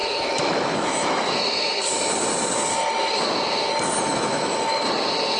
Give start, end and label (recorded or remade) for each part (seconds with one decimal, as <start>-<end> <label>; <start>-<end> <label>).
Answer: 0.0-1.9 remade; 1.9-4.1 recorded; 4.1-4.9 remade; 4.9-5.4 recorded